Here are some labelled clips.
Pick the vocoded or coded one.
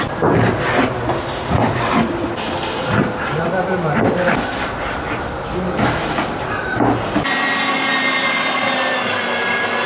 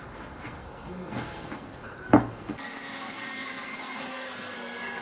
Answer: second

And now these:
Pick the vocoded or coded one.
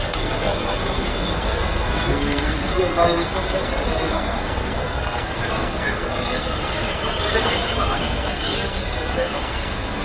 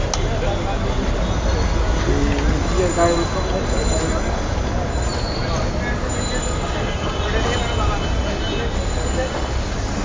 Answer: first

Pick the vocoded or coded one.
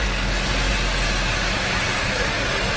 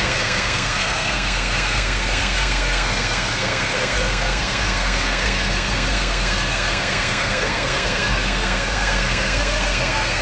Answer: second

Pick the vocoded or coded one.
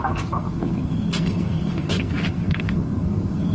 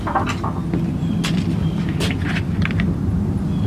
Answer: first